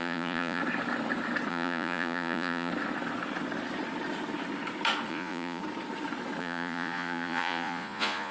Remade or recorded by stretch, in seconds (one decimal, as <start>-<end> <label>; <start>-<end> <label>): 0.0-0.6 remade; 0.6-1.5 recorded; 1.5-2.7 remade; 2.7-5.1 recorded; 5.1-5.6 remade; 5.6-6.4 recorded; 6.4-8.3 remade